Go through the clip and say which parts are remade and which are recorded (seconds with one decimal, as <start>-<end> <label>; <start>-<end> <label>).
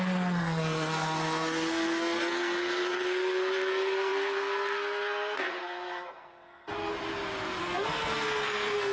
0.0-6.9 remade; 6.9-7.6 recorded; 7.6-8.9 remade